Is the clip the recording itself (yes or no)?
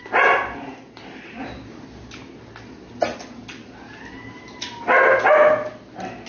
yes